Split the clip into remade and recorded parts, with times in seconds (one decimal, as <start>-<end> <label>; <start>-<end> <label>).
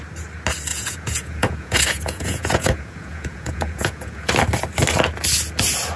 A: 0.0-0.7 recorded; 0.7-4.3 remade; 4.3-6.0 recorded